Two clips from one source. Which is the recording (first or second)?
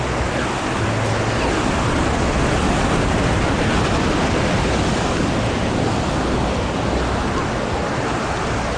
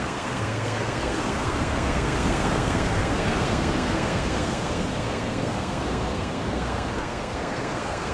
first